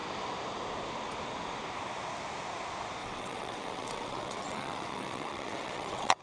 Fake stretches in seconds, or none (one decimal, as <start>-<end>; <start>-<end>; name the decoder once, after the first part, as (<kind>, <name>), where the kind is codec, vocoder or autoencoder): 3.0-6.2 (vocoder, WaveNeXt)